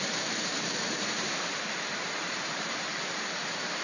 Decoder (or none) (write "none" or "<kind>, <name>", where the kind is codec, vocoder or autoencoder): vocoder, BigVGAN v2